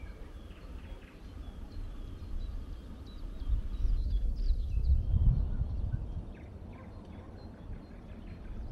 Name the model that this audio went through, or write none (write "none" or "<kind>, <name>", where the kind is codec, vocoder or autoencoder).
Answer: vocoder, BigVGAN v2